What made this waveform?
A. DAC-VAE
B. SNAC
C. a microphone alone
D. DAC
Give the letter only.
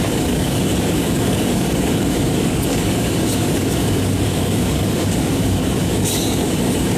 D